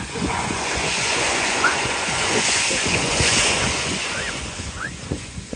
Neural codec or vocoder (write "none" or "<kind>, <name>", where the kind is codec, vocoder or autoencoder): vocoder, Vocos